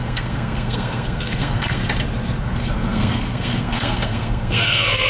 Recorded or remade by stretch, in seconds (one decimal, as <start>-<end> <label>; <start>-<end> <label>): 0.0-1.8 remade; 1.8-2.4 recorded; 2.4-5.1 remade